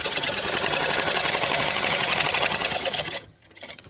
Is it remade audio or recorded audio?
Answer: remade